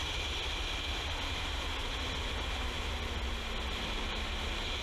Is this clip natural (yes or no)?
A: yes